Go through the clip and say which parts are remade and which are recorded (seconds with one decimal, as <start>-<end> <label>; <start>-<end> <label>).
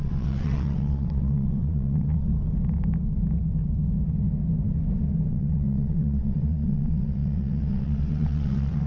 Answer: 0.0-2.3 remade; 2.3-5.3 recorded; 5.3-8.9 remade